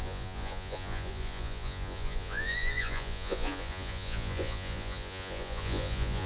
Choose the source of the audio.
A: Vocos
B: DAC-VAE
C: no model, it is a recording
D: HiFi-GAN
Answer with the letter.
A